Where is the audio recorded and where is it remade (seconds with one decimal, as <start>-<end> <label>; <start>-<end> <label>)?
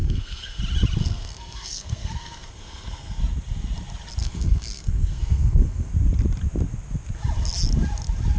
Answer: 0.0-0.6 remade; 0.6-1.0 recorded; 1.0-3.2 remade; 3.2-4.2 recorded; 4.2-5.9 remade; 5.9-8.4 recorded